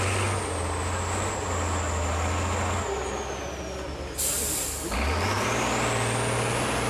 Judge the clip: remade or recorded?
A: recorded